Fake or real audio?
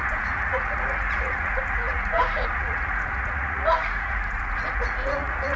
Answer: fake